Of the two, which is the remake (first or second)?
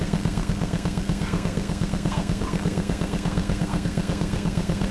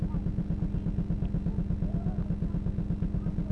first